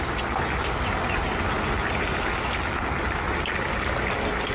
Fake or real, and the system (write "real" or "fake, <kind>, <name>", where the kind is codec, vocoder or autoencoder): real